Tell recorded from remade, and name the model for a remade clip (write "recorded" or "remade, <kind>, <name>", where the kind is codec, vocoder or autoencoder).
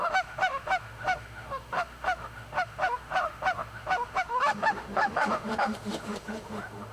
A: remade, autoencoder, DAC-VAE